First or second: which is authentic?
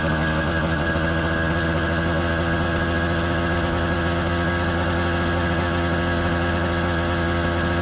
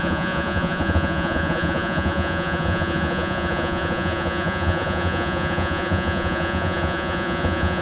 first